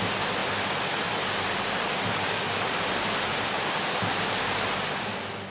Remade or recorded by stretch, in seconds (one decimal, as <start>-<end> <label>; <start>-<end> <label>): 0.0-5.5 recorded